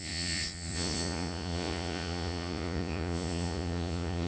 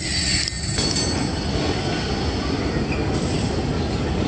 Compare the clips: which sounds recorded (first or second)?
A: second